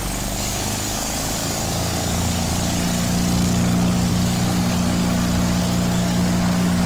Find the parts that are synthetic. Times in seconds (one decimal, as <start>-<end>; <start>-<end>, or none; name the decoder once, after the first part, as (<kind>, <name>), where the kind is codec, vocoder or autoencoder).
0.0-2.5 (codec, DAC); 4.1-5.0; 5.6-6.9